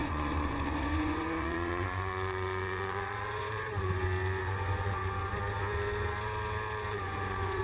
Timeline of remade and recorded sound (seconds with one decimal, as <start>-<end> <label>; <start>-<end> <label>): 0.0-4.0 remade; 4.0-4.4 recorded; 4.4-5.3 remade; 5.3-6.9 recorded; 6.9-7.6 remade

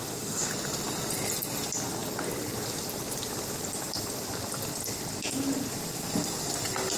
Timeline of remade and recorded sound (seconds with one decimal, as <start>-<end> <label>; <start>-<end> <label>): 0.0-0.5 remade; 0.5-7.0 recorded

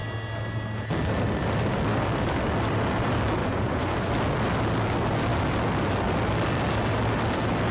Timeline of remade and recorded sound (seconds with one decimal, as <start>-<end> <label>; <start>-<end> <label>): 0.0-3.4 recorded; 3.4-4.1 remade; 4.1-7.7 recorded

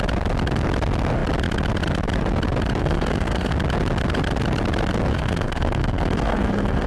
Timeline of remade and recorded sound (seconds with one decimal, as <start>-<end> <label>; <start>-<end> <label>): 0.0-2.8 recorded; 2.8-3.5 remade; 3.5-5.1 recorded; 5.1-6.9 remade

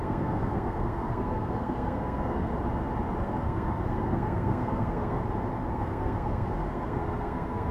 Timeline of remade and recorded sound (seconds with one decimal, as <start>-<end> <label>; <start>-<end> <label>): 0.0-2.5 remade; 2.5-3.2 recorded; 3.2-5.2 remade; 5.2-5.7 recorded; 5.7-7.7 remade